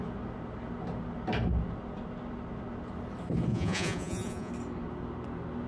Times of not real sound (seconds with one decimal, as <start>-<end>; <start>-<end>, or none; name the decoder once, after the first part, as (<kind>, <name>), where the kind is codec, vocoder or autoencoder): 3.5-4.5 (vocoder, Vocos)